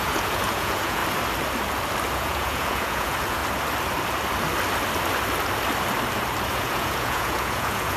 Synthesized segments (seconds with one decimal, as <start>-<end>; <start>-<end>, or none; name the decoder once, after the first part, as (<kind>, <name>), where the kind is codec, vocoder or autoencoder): 0.0-1.0 (vocoder, Vocos); 2.1-3.4; 6.5-8.0